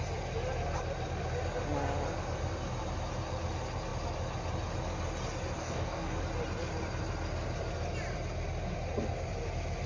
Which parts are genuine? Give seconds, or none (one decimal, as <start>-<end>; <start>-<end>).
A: 0.0-5.6; 6.2-9.9